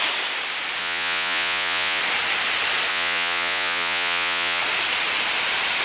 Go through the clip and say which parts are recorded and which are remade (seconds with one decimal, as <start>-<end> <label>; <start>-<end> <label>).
0.0-0.8 recorded; 0.8-2.0 remade; 2.0-2.9 recorded; 2.9-4.6 remade; 4.6-5.8 recorded